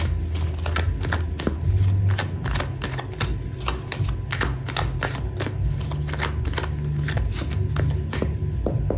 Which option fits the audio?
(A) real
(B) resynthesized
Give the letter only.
A